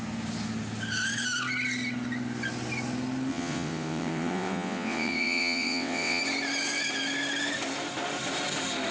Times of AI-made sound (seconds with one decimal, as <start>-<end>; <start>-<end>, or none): 3.3-6.2